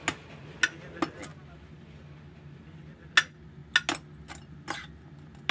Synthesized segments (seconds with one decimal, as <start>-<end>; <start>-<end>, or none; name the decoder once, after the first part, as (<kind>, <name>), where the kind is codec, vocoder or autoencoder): none